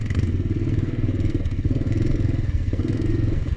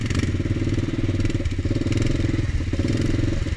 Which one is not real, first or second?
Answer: first